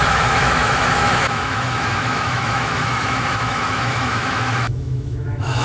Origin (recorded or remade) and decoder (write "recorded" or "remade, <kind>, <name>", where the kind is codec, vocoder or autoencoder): remade, autoencoder, DAC-VAE